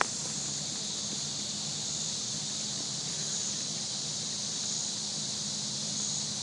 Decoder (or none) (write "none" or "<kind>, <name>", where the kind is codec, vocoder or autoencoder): none